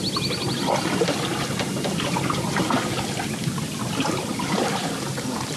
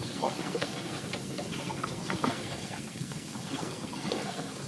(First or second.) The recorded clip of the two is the first